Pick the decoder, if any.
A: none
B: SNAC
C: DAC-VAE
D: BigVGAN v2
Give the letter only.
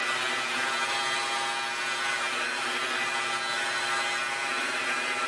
A